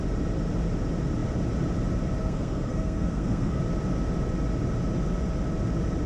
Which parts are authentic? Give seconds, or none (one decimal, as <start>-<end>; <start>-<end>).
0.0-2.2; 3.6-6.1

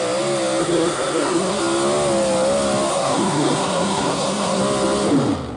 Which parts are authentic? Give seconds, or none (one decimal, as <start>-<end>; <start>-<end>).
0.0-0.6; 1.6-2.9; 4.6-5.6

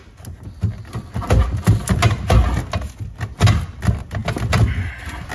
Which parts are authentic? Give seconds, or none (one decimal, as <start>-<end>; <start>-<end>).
0.0-5.3

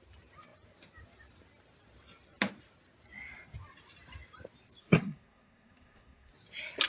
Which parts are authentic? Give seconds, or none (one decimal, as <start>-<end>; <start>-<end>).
0.0-4.8; 6.3-6.9